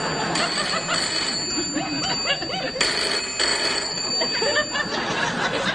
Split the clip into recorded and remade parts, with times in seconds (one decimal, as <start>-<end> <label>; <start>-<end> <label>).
0.0-3.5 recorded; 3.5-4.1 remade; 4.1-5.7 recorded